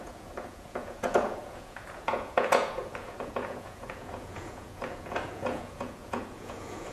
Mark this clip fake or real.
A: fake